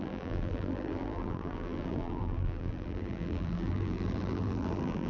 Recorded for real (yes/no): no